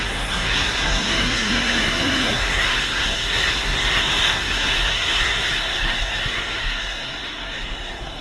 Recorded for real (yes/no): no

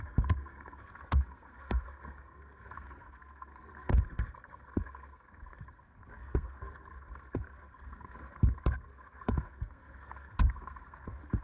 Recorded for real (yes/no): no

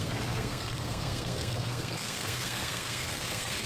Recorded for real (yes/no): no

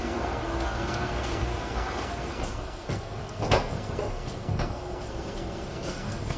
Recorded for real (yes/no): no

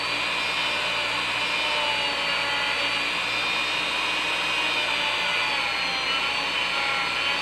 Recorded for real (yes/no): yes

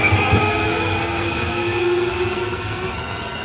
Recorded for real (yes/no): no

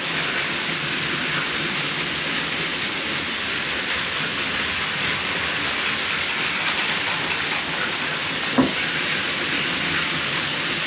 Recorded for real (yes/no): yes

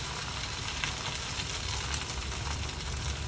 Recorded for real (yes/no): yes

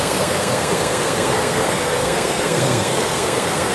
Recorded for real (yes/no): no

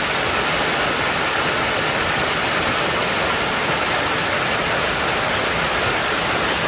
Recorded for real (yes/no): yes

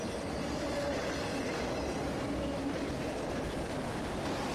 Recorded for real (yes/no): yes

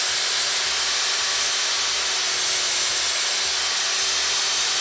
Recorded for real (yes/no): yes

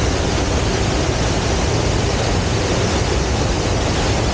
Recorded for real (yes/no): yes